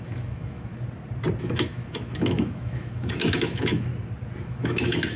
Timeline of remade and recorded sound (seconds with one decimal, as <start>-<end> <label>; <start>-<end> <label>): 0.0-0.7 remade; 0.7-1.4 recorded; 1.4-3.9 remade; 3.9-4.4 recorded; 4.4-5.2 remade